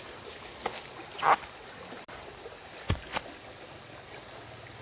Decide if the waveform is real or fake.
real